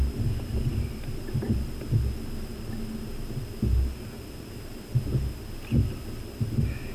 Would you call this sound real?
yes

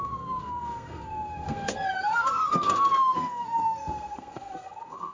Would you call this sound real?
no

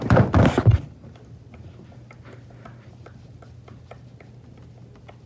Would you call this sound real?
yes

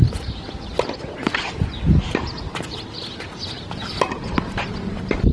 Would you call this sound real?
yes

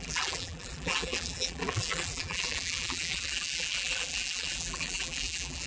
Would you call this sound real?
no